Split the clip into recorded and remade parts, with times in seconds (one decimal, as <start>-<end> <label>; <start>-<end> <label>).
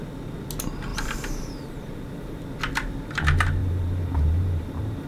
0.0-0.9 recorded; 0.9-2.4 remade; 2.4-3.6 recorded; 3.6-5.1 remade